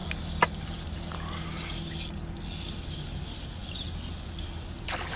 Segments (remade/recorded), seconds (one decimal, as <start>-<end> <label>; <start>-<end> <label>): 0.0-5.2 recorded